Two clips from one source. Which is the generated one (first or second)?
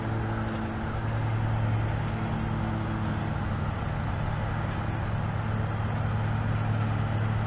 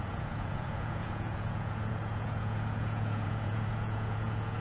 second